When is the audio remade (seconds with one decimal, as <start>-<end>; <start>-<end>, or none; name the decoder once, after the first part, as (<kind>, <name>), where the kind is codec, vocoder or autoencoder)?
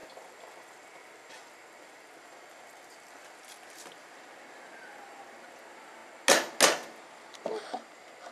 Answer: none